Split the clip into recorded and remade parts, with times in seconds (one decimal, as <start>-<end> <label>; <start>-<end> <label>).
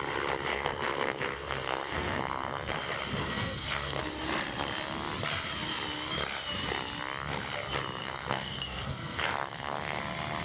0.0-0.5 recorded; 0.5-2.8 remade; 2.8-3.2 recorded; 3.2-4.0 remade; 4.0-8.0 recorded; 8.0-10.0 remade; 10.0-10.4 recorded